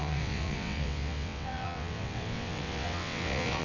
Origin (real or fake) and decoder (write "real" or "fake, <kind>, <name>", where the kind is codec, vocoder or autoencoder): fake, vocoder, WaveNeXt